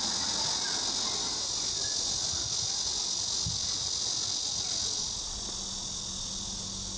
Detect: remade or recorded recorded